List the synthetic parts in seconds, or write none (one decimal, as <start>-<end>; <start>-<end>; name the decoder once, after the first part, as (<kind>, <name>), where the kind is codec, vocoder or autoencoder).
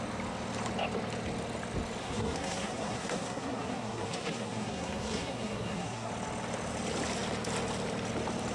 2.0-6.1 (codec, SNAC)